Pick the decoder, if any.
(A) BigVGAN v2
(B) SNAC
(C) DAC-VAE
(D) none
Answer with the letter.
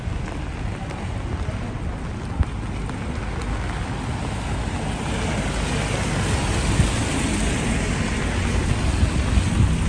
D